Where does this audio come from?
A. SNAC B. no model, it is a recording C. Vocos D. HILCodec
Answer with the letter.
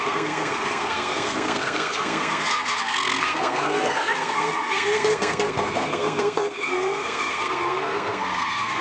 A